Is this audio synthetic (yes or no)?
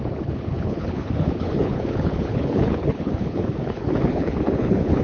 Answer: yes